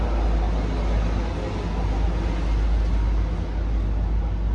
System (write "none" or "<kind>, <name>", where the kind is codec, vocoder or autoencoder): none